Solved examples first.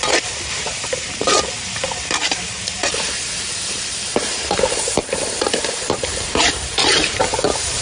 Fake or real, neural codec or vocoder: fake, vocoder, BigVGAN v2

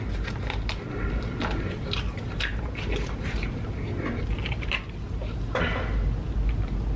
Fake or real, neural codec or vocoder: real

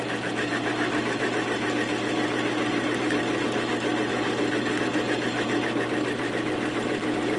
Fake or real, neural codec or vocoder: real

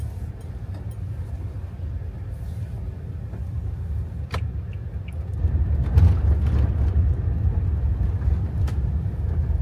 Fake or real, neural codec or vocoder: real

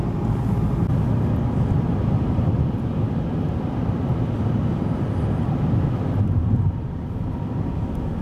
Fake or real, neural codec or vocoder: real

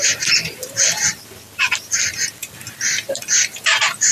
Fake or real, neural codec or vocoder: fake, vocoder, BigVGAN v2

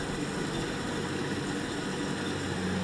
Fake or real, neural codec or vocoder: real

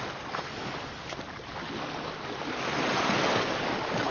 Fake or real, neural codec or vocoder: real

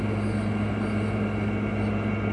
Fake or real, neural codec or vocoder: real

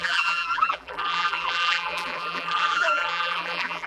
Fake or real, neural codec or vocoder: fake, vocoder, BigVGAN v2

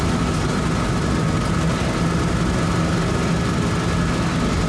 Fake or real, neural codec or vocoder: real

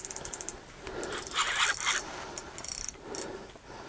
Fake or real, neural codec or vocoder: real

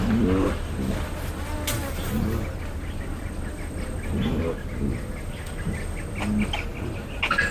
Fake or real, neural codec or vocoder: real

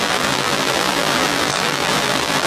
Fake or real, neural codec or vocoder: fake, vocoder, BigVGAN v2